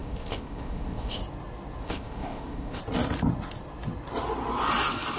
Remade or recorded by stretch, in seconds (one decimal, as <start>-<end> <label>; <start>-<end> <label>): 0.0-1.2 remade; 1.2-1.8 recorded; 1.8-2.8 remade; 2.8-5.2 recorded